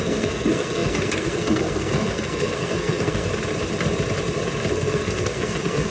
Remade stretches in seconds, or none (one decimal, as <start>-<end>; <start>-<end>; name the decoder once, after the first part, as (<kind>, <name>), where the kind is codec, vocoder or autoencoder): 0.0-3.3 (codec, SNAC); 4.7-5.9

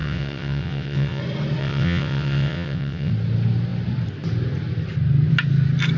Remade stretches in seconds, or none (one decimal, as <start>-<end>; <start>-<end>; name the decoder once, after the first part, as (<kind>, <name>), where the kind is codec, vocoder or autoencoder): 0.0-1.2 (vocoder, WaveNeXt); 1.6-3.1

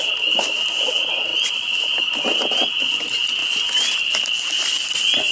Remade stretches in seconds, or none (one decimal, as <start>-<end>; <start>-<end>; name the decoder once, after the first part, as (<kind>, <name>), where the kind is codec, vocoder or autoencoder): none

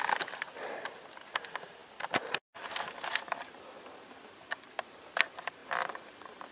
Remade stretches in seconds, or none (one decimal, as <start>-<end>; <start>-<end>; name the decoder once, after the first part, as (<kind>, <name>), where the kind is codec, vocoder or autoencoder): none